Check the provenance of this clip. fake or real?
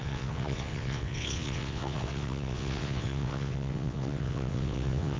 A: fake